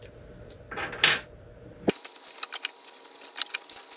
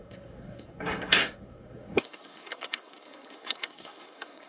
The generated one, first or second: second